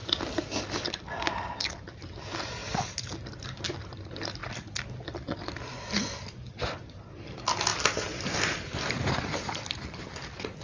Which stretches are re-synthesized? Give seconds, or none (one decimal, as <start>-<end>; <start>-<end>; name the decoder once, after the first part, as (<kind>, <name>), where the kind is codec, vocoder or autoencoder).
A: none